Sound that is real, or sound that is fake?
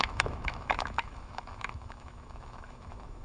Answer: fake